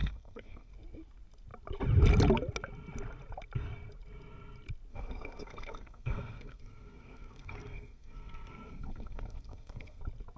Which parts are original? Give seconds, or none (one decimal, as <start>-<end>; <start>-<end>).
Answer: 0.7-4.9; 10.0-10.4